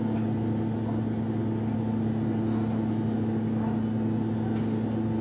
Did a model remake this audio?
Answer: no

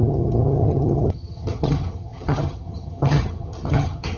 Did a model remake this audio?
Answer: yes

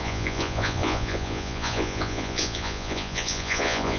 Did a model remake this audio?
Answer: yes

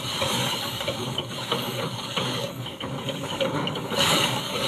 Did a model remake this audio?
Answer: yes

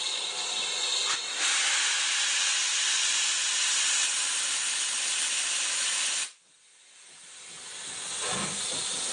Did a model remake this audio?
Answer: no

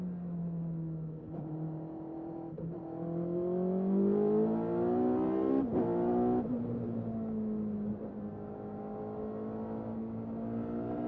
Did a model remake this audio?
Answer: no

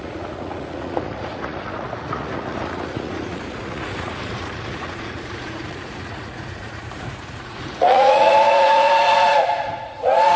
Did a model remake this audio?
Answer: yes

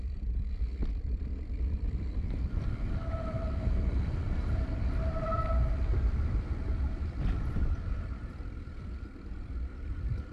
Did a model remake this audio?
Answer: yes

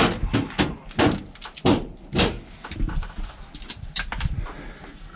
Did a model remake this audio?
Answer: no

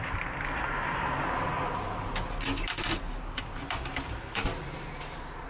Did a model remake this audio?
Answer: no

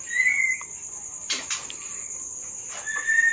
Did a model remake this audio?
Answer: no